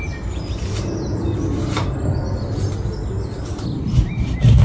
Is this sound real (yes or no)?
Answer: yes